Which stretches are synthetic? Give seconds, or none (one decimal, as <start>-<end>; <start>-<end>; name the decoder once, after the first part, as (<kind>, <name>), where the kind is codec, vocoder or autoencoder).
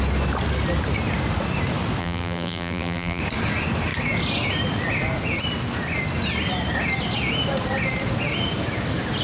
2.0-3.2 (vocoder, BigVGAN v2)